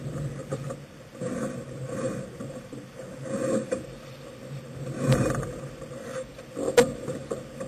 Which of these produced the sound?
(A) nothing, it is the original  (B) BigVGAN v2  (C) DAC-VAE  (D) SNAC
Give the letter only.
A